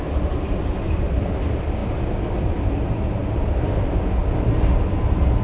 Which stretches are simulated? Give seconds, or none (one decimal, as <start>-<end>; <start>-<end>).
none